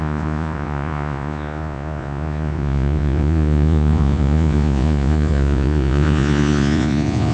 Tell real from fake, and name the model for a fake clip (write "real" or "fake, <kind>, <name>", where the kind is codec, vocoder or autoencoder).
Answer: fake, vocoder, Vocos